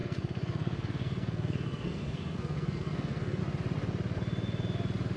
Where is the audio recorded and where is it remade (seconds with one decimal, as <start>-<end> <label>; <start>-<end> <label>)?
0.0-3.4 remade; 3.4-5.2 recorded